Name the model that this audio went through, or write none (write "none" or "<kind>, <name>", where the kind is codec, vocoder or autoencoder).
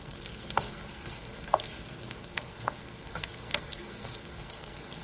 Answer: codec, SNAC